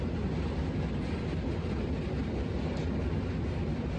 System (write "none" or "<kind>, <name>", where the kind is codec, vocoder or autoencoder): none